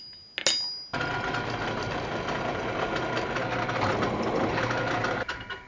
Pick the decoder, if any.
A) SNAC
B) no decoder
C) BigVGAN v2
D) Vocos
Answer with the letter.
B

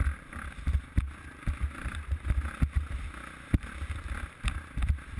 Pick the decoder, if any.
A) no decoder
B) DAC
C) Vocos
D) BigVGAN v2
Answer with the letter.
A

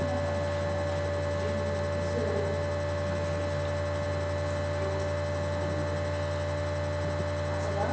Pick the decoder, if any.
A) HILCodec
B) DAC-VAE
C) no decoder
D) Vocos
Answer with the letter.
C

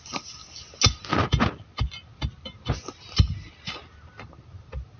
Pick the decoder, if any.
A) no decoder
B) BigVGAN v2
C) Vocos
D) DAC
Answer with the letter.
A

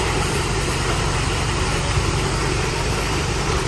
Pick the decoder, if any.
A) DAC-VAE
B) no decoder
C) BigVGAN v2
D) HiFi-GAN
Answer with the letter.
C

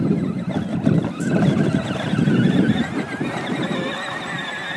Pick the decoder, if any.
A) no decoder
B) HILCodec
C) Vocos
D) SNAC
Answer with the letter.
A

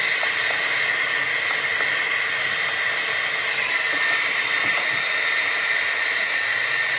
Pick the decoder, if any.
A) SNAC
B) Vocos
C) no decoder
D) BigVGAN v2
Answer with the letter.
C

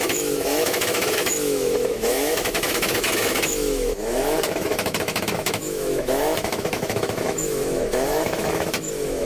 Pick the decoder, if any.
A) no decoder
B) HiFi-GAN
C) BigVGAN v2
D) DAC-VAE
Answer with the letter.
D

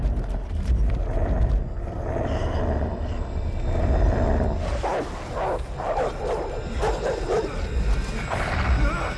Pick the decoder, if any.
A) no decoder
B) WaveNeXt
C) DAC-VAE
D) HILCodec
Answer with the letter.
A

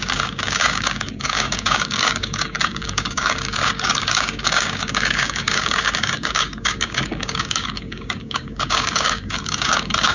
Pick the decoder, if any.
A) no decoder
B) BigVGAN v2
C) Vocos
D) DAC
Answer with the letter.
D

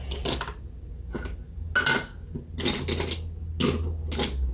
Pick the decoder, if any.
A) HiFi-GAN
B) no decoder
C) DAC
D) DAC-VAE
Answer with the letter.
B